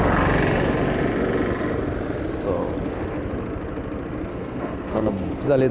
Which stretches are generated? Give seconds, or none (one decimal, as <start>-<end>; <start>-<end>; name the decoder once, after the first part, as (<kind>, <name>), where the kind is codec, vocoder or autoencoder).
4.3-5.3 (codec, SNAC)